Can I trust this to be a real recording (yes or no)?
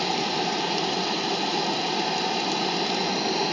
yes